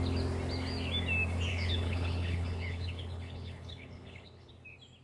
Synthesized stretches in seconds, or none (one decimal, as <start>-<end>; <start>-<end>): 1.5-4.5